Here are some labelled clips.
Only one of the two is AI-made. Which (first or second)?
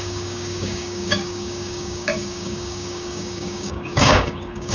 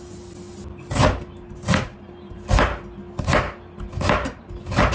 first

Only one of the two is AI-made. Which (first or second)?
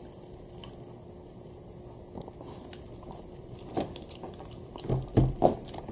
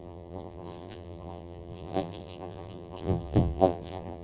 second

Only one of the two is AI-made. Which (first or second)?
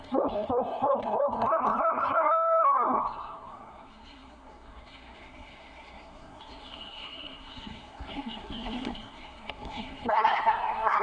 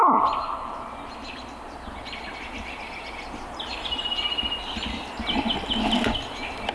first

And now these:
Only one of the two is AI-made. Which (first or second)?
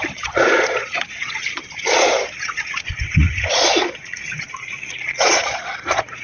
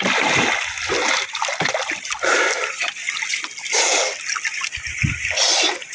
first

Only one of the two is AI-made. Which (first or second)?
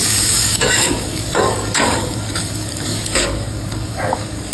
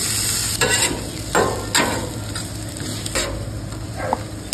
first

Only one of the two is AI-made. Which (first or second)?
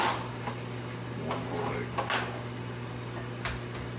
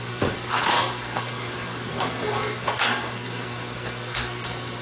second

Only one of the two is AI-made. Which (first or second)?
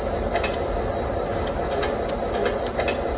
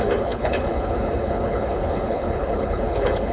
second